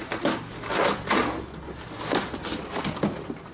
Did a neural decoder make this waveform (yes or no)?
no